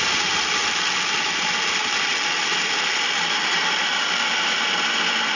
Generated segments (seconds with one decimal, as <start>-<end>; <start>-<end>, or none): none